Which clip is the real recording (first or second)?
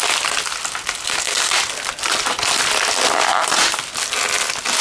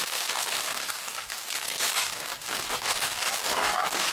first